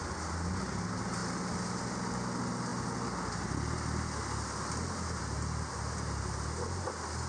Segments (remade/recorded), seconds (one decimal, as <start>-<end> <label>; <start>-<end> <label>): 0.0-7.3 recorded